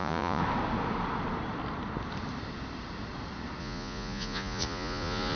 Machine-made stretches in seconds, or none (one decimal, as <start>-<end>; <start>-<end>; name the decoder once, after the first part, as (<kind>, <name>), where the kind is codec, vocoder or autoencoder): 0.0-0.4 (vocoder, Vocos); 3.6-5.4